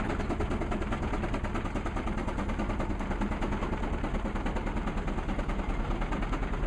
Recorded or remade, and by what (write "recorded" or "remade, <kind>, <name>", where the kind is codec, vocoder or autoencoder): recorded